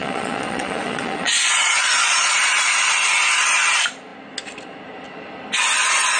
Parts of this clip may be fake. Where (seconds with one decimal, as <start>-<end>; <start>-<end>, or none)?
0.0-2.4